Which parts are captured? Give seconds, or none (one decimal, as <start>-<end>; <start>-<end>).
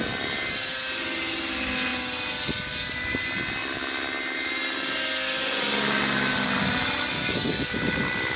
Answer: 0.0-8.4